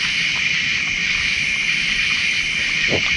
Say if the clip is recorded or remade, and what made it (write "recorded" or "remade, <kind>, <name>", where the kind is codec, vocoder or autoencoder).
recorded